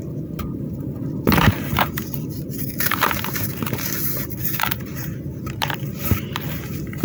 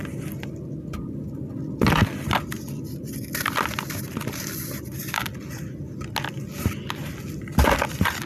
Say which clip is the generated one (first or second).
first